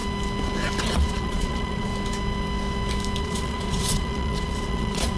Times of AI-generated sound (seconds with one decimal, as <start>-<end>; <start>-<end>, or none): 0.8-1.9; 3.2-5.2